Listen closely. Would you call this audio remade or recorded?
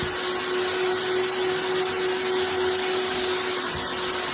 recorded